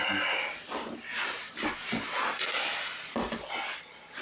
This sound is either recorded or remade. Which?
recorded